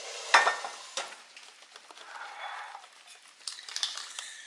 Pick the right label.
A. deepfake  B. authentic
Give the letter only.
B